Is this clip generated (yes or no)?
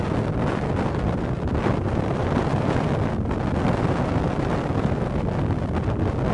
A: no